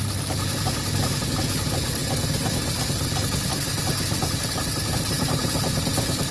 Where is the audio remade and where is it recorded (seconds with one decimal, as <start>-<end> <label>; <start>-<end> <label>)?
0.0-6.3 recorded